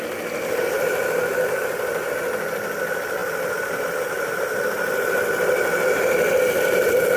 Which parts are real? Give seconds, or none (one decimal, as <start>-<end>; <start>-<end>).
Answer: 0.0-7.2